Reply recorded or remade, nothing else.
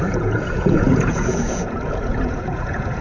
remade